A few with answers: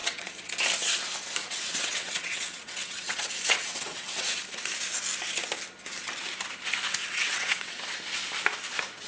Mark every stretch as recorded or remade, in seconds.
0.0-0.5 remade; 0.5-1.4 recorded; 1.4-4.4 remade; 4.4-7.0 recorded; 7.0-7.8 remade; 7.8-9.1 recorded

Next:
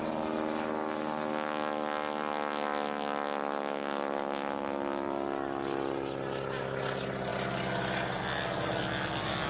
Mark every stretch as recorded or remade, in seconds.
0.0-9.5 recorded

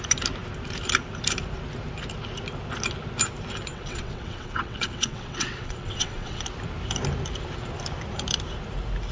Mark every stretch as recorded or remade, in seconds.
0.0-3.7 recorded; 3.7-6.4 remade; 6.4-9.1 recorded

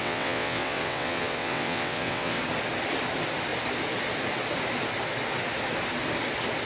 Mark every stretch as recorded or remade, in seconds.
0.0-2.4 remade; 2.4-6.7 recorded

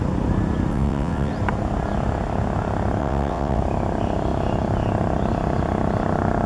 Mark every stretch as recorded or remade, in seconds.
0.0-0.7 recorded; 0.7-1.3 remade; 1.3-3.0 recorded; 3.0-3.6 remade; 3.6-6.5 recorded

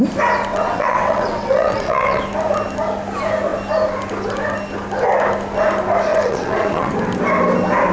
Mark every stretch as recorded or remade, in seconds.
0.0-0.5 recorded; 0.5-2.2 remade; 2.2-6.1 recorded; 6.1-6.9 remade; 6.9-7.9 recorded